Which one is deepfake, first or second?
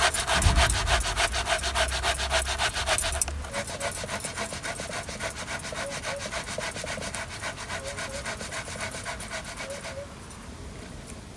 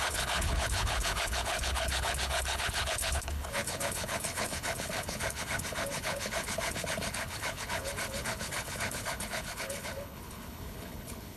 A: second